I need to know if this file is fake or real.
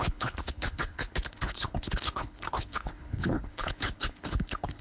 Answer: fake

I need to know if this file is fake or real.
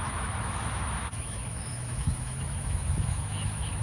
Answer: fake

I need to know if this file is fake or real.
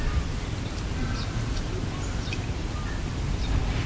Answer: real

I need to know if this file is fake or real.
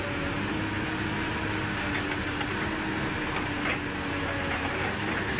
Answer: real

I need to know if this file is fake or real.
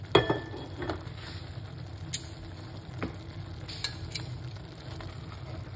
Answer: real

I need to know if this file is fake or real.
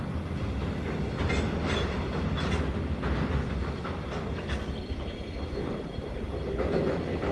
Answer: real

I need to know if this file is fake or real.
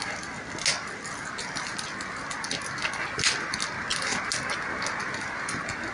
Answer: real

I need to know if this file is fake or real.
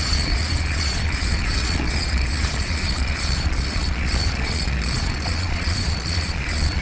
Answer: fake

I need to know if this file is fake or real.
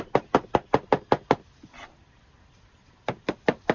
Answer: real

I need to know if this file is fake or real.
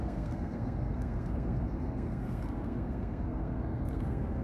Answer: fake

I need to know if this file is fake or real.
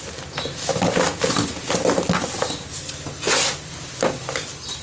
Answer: real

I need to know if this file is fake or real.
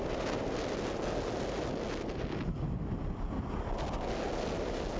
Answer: real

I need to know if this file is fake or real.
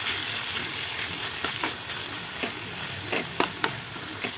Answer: real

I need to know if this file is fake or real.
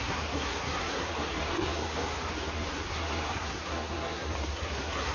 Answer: fake